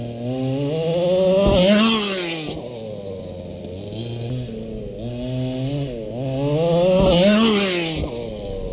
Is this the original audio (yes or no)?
yes